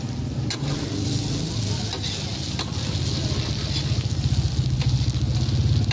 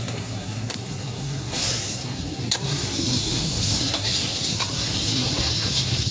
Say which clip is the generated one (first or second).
second